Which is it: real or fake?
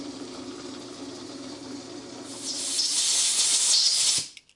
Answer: real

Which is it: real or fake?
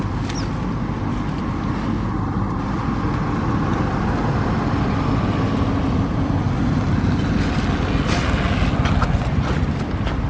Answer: real